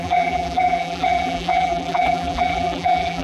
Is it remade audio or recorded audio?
remade